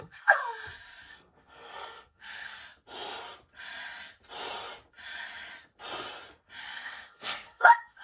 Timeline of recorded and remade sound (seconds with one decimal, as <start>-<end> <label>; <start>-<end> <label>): 0.0-0.4 remade; 0.4-1.1 recorded; 1.1-2.6 remade; 2.6-6.6 recorded; 6.6-8.0 remade